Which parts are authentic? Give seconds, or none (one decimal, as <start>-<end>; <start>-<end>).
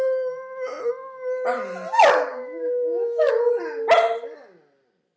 0.0-2.3; 3.3-5.2